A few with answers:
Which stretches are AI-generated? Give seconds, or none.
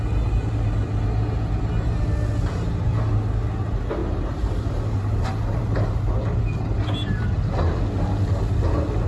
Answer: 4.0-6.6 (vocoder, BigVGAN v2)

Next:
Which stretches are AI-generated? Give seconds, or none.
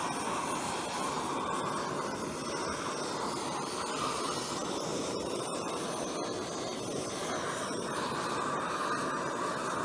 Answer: 4.9-5.7 (vocoder, BigVGAN v2)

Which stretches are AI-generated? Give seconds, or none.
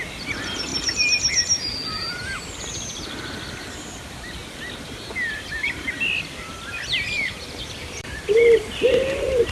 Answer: 0.0-0.7 (vocoder, BigVGAN v2); 2.1-4.4; 5.3-9.5